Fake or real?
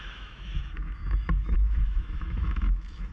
fake